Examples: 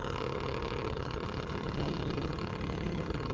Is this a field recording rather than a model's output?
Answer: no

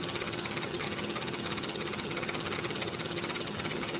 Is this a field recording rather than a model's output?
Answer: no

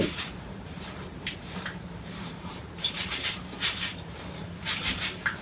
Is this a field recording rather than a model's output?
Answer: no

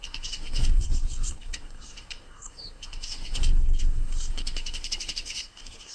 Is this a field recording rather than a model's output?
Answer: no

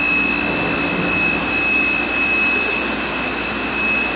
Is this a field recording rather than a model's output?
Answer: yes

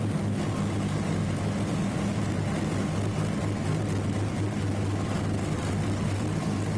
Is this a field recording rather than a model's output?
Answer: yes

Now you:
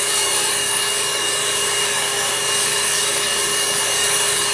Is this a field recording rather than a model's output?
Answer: no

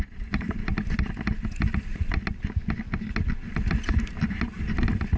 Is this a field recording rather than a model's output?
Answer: yes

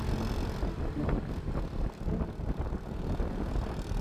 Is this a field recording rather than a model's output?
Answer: no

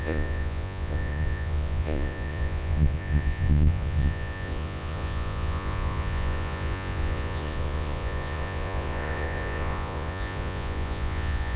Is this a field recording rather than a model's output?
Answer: no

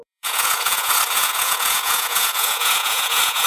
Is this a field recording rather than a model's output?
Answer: no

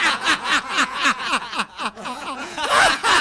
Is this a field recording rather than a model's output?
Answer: no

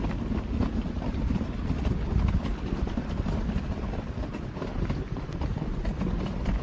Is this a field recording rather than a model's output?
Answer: yes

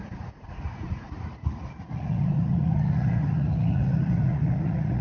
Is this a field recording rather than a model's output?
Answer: no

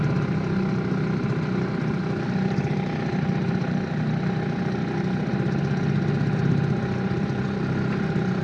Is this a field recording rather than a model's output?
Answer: yes